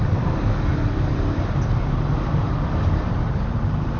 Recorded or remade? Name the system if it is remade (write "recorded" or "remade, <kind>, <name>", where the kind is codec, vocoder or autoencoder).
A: recorded